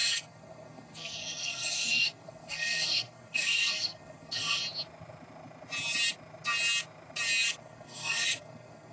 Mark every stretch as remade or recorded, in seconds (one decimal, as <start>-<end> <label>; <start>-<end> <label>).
0.0-4.6 remade; 4.6-7.6 recorded; 7.6-8.9 remade